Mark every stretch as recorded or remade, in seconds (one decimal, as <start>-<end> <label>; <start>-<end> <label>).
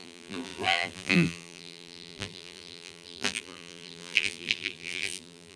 0.0-5.6 remade